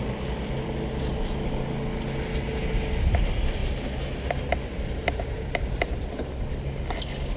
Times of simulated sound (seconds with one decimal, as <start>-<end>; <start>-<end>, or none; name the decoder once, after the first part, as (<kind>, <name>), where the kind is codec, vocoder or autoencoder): none